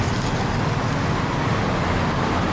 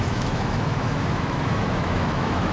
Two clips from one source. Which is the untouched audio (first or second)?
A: first